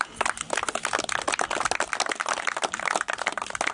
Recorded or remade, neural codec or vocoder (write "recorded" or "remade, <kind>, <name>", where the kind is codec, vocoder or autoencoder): recorded